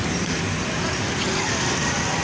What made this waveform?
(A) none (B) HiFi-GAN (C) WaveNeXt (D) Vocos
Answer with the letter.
A